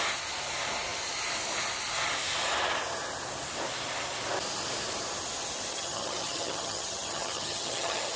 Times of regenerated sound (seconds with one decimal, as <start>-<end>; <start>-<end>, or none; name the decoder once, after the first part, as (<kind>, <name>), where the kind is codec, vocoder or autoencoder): 5.7-8.2 (vocoder, HiFi-GAN)